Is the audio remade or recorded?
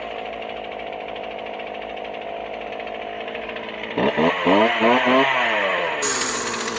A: recorded